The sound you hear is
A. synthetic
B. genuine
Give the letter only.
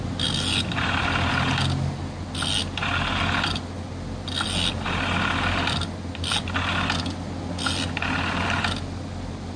B